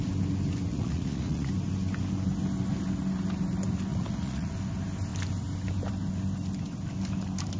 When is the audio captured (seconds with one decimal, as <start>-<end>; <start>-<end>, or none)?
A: 0.0-0.7; 1.5-3.9; 4.5-7.6